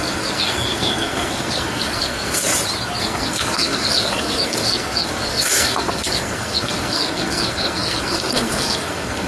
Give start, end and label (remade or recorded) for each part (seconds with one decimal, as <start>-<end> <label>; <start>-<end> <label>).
0.0-2.5 remade; 2.5-3.0 recorded; 3.0-9.3 remade